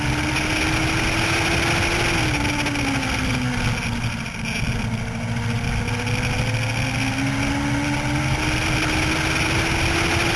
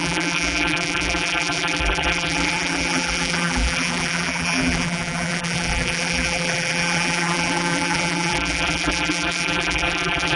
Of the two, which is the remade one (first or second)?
second